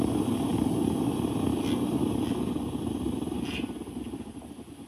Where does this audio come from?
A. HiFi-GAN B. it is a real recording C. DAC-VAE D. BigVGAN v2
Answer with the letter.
B